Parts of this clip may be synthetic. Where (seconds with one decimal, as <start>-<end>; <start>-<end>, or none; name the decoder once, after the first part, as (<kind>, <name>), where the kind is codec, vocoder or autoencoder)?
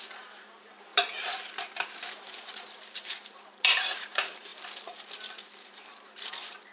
0.0-0.9 (vocoder, BigVGAN v2); 2.1-6.7